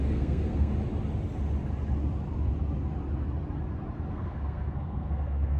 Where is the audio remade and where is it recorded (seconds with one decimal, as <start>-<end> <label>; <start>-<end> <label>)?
0.0-0.7 remade; 0.7-4.1 recorded; 4.1-5.6 remade